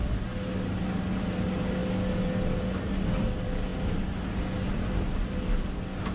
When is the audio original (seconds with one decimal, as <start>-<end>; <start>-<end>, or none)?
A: 0.0-6.1